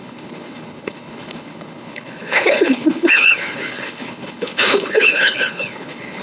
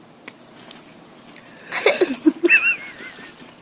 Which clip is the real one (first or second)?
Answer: second